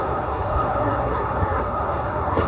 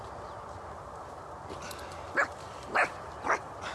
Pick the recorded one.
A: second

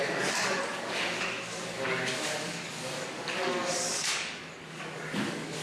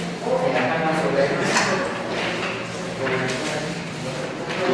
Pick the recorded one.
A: second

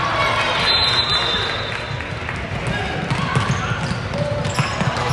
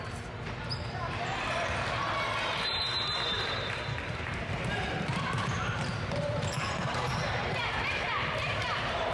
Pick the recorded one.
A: first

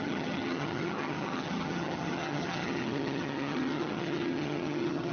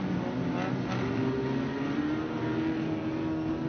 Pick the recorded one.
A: second